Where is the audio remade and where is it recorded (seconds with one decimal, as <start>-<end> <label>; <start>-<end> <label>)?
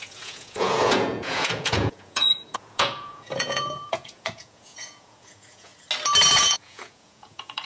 0.0-5.7 remade; 5.7-6.3 recorded; 6.3-7.7 remade